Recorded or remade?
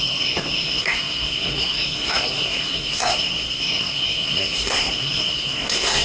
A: remade